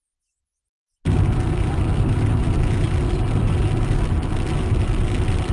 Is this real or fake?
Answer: real